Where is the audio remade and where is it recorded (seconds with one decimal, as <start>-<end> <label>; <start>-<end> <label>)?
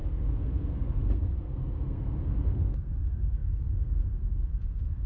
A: 0.0-5.1 remade